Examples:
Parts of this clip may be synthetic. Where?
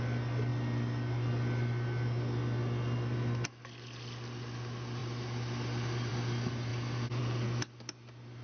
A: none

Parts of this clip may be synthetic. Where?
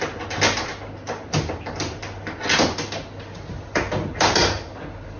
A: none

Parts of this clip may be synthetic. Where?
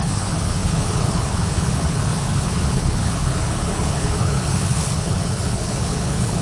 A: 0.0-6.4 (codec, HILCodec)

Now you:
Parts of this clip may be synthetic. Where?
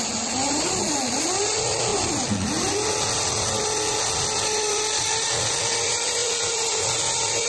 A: none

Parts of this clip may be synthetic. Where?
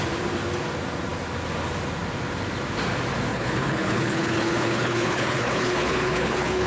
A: 3.3-6.7 (codec, HILCodec)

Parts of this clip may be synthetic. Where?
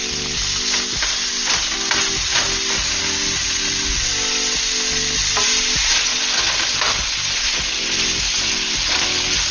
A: none